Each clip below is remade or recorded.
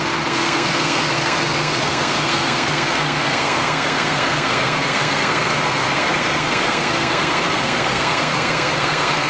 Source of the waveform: remade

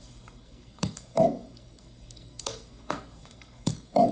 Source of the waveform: remade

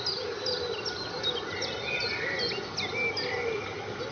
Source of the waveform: recorded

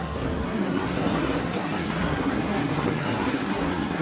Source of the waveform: remade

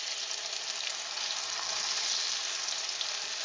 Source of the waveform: recorded